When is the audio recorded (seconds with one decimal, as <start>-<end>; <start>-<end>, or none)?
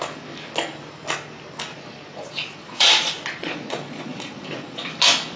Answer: 0.0-1.7; 4.9-5.4